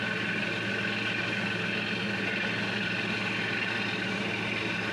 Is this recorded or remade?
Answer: recorded